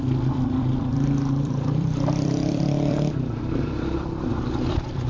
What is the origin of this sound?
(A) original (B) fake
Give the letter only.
B